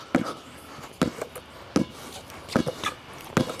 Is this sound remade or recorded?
recorded